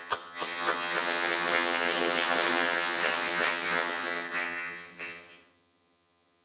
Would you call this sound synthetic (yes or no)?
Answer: yes